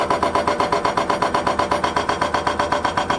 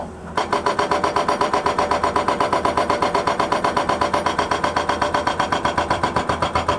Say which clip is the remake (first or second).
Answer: second